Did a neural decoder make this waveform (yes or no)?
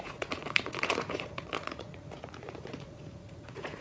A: yes